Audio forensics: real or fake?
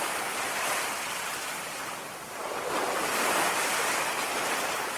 real